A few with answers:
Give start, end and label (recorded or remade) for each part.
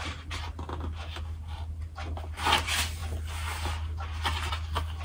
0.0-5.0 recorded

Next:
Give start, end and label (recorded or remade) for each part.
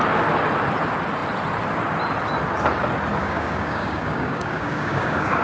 0.0-3.2 recorded; 3.2-5.4 remade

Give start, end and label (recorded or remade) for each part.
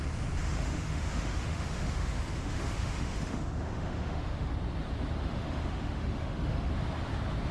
0.0-0.4 recorded; 0.4-4.5 remade; 4.5-5.2 recorded; 5.2-6.7 remade; 6.7-7.5 recorded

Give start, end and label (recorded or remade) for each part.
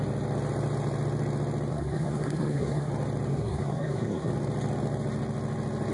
0.0-1.7 recorded; 1.7-2.9 remade; 2.9-3.3 recorded; 3.3-4.3 remade; 4.3-5.9 recorded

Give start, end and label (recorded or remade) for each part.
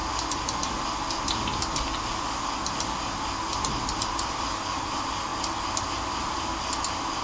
0.0-7.2 recorded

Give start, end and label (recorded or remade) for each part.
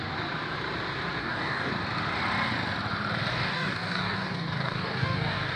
0.0-1.2 recorded; 1.2-1.7 remade; 1.7-3.3 recorded; 3.3-5.6 remade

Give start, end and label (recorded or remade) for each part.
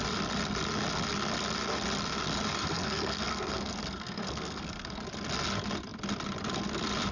0.0-2.6 recorded; 2.6-5.0 remade; 5.0-7.1 recorded